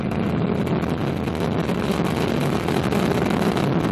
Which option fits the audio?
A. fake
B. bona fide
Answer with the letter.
B